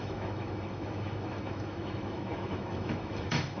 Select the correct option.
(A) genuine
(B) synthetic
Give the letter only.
B